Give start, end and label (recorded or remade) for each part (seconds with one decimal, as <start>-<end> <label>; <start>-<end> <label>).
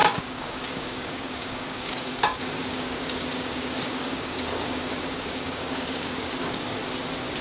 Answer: 0.0-6.8 remade; 6.8-7.4 recorded